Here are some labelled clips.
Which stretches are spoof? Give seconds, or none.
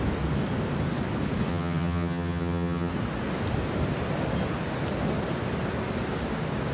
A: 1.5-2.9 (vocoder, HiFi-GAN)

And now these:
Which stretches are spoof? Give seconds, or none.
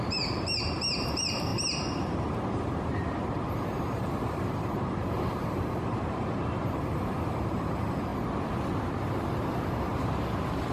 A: 0.0-8.1 (vocoder, BigVGAN v2); 8.9-10.7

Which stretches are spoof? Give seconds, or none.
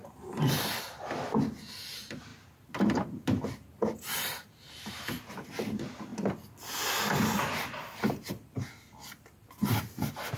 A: 2.3-5.5 (vocoder, BigVGAN v2)